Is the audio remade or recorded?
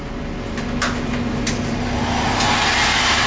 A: recorded